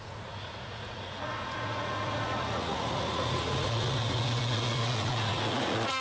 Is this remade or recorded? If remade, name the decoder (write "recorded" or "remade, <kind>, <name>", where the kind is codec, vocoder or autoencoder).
remade, vocoder, Vocos